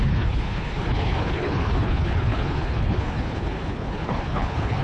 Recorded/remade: remade